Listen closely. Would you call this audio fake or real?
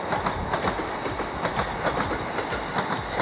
real